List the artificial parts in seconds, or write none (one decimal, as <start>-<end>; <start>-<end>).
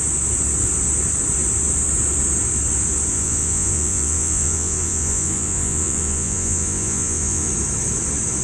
3.1-7.5